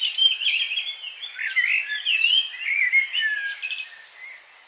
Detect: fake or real real